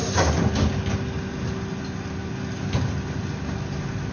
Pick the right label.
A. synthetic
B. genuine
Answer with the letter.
B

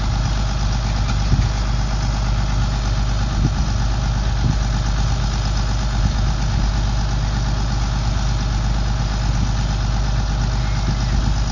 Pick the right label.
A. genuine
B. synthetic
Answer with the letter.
A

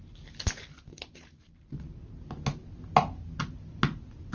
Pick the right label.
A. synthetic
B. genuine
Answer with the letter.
B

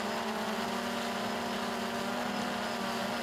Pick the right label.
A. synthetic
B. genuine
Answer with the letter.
B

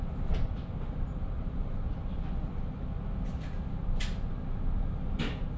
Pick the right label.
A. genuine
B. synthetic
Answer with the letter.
A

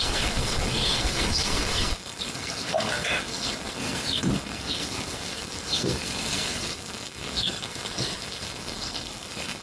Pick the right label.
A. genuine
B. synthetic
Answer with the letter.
B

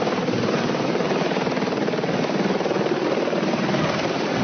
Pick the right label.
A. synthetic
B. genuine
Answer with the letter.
B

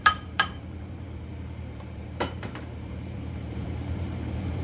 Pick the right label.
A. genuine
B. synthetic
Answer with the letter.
B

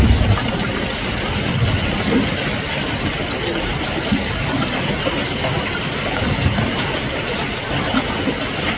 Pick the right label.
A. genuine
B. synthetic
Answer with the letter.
A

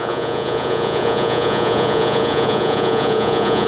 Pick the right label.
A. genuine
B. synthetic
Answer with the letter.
B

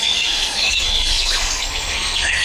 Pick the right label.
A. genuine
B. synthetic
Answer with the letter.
B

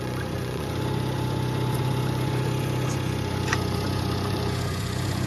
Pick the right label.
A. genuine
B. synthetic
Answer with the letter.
B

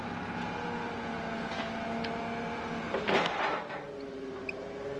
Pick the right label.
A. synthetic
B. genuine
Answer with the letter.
B